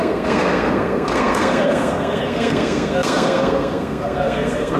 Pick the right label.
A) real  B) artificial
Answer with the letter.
B